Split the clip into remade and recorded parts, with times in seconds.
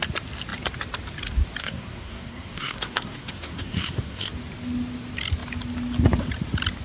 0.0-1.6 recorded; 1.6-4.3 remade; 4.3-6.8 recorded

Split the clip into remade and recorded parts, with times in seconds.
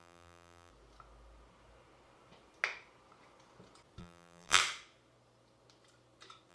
0.0-0.7 remade; 0.7-4.0 recorded; 4.0-4.6 remade; 4.6-6.5 recorded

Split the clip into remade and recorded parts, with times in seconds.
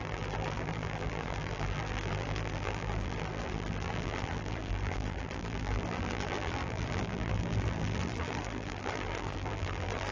0.0-10.1 remade